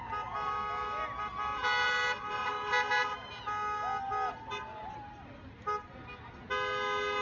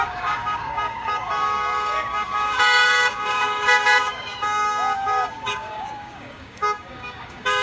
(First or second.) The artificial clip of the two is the second